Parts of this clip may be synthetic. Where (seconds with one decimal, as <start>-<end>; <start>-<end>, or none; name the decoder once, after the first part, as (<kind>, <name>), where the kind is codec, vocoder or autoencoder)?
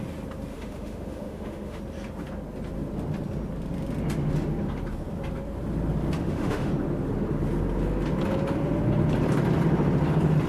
0.5-1.8 (autoencoder, DAC-VAE); 6.2-6.7